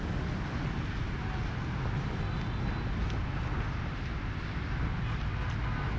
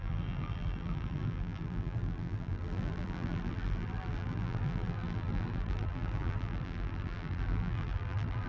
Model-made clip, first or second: second